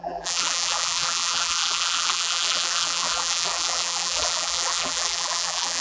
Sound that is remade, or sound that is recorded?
remade